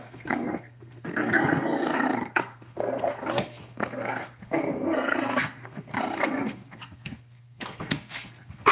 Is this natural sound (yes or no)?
no